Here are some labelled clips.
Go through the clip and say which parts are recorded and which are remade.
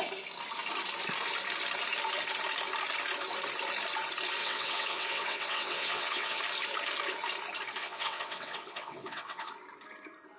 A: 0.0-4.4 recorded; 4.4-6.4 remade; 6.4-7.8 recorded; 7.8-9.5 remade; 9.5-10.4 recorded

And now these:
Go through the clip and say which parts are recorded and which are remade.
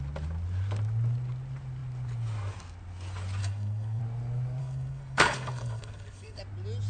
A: 0.0-3.4 recorded; 3.4-4.0 remade; 4.0-4.6 recorded; 4.6-6.4 remade; 6.4-6.9 recorded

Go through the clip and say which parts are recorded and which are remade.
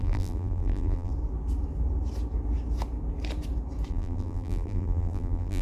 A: 0.0-1.1 remade; 1.1-3.9 recorded; 3.9-5.6 remade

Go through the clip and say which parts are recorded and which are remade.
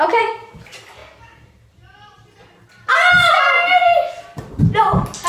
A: 0.0-5.3 recorded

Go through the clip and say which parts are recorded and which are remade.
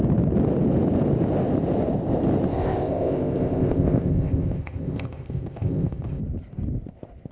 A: 0.0-2.5 recorded; 2.5-6.2 remade; 6.2-7.3 recorded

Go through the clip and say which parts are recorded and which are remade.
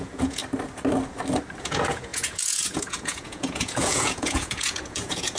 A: 0.0-0.4 remade; 0.4-1.6 recorded; 1.6-5.4 remade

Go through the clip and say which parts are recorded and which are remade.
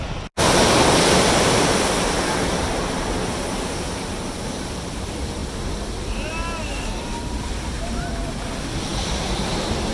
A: 0.0-9.9 recorded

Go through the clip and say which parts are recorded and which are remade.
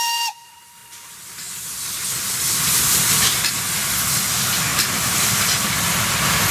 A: 0.0-4.7 recorded; 4.7-5.3 remade; 5.3-6.5 recorded